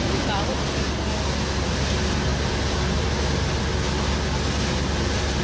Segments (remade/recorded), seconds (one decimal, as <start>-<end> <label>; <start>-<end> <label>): 0.0-5.4 recorded